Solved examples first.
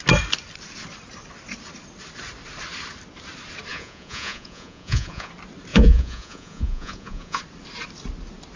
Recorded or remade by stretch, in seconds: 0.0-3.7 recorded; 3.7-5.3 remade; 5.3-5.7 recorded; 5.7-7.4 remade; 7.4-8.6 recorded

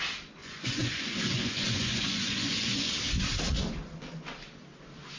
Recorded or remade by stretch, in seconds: 0.0-0.4 recorded; 0.4-2.9 remade; 2.9-5.2 recorded

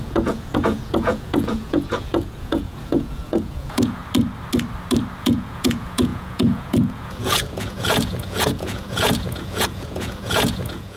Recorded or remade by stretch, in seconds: 0.0-4.0 remade; 4.0-5.2 recorded; 5.2-11.0 remade

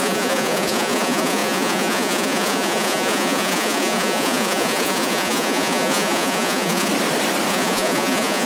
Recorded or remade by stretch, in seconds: 0.0-6.9 remade; 6.9-7.5 recorded; 7.5-8.5 remade

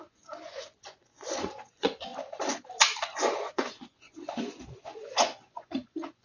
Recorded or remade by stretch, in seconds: 0.0-2.1 remade; 2.1-3.2 recorded; 3.2-6.2 remade

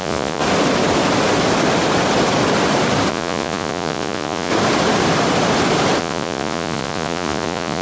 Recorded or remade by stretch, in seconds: 0.0-0.4 remade; 0.4-3.1 recorded; 3.1-4.5 remade; 4.5-6.0 recorded; 6.0-7.8 remade